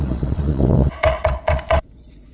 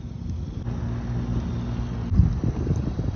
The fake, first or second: first